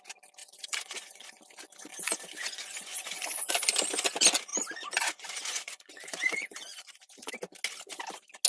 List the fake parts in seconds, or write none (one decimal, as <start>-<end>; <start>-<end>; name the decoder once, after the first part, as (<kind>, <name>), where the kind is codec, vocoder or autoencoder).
0.4-1.4 (vocoder, Vocos); 1.9-3.5; 4.5-7.3